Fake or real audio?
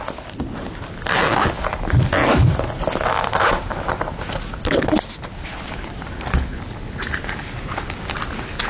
real